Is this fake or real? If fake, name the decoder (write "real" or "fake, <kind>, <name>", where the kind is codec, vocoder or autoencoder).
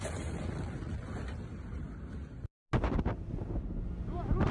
real